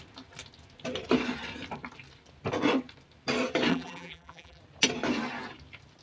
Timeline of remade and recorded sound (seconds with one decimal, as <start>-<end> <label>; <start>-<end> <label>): 0.0-3.7 recorded; 3.7-4.6 remade; 4.6-6.0 recorded